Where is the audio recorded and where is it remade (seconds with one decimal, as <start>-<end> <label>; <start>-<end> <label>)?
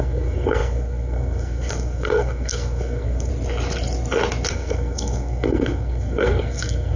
0.0-3.3 remade; 3.3-4.5 recorded; 4.5-7.0 remade